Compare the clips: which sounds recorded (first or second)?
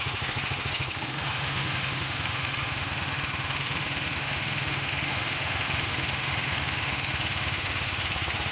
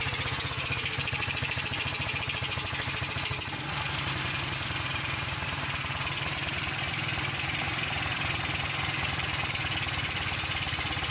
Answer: second